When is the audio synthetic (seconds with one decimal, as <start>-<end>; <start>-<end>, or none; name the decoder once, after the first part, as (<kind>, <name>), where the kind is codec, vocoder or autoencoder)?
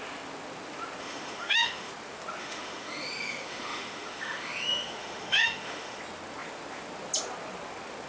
1.0-1.9 (autoencoder, DAC-VAE); 2.4-6.0